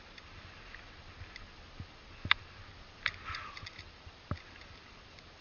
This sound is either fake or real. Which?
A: real